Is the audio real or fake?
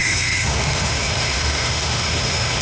fake